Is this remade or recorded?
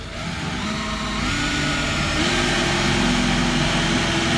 recorded